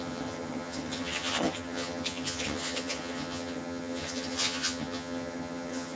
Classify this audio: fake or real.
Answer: fake